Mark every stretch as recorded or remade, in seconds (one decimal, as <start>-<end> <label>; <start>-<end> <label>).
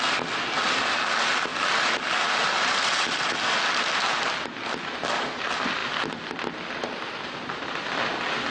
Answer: 0.0-8.5 recorded